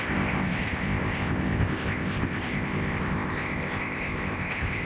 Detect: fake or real fake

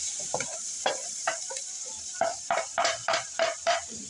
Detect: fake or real fake